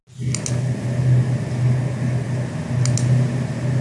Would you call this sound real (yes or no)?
yes